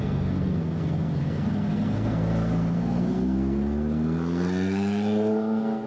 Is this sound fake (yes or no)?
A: yes